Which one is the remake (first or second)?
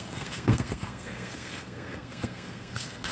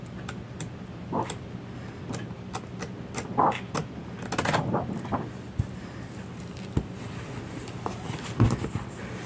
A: first